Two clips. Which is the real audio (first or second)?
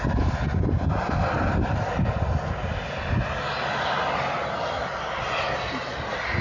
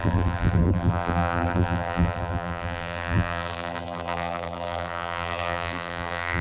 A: first